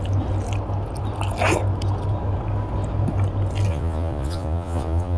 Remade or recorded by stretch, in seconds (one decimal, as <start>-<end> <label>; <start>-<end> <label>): 0.0-3.7 recorded; 3.7-5.2 remade